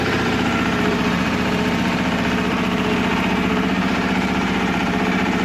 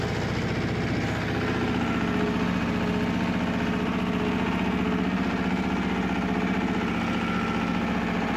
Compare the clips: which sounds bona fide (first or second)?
second